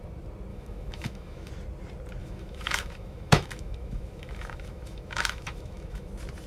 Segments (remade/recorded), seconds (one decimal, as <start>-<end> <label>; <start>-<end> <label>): 0.0-0.5 recorded; 0.5-1.5 remade; 1.5-2.2 recorded; 2.2-6.1 remade; 6.1-6.5 recorded